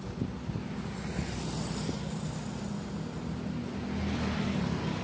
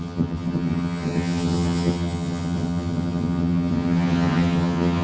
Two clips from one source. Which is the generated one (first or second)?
second